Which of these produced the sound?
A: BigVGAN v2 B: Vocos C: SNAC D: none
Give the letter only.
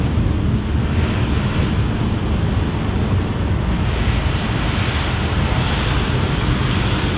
D